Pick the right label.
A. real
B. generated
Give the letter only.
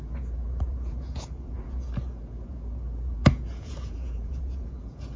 B